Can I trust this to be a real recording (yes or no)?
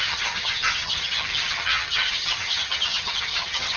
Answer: no